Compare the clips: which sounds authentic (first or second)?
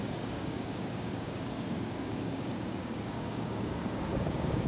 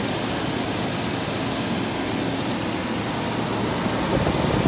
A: second